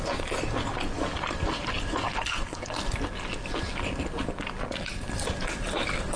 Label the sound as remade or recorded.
recorded